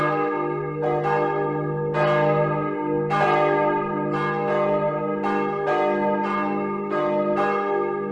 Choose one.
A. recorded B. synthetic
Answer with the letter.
A